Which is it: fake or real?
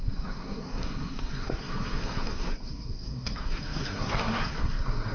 fake